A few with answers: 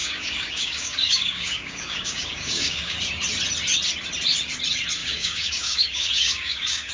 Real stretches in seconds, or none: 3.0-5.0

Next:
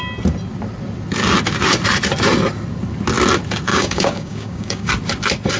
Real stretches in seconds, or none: 0.0-3.7; 4.9-5.6

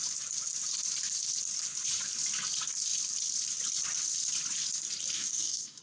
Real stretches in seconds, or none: 0.0-5.1

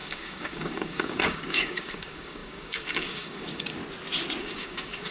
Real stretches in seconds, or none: 3.8-4.4